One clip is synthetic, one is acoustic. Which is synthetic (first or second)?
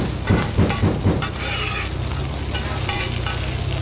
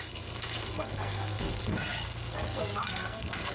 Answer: second